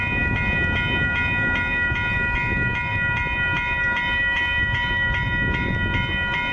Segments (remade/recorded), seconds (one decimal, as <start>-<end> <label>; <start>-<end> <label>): 0.0-6.5 recorded